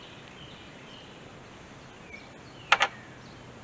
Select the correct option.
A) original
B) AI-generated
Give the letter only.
A